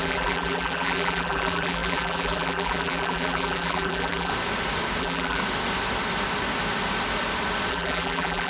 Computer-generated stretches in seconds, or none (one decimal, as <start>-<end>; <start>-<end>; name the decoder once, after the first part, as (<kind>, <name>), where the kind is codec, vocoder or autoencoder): 0.0-4.3 (vocoder, BigVGAN v2); 5.0-5.4; 7.7-8.5